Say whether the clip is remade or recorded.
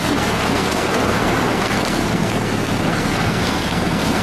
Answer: remade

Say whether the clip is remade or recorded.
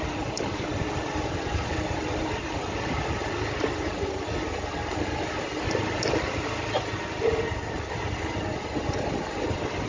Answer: recorded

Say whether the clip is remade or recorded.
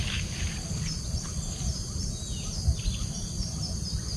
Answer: recorded